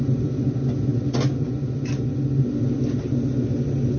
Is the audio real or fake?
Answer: real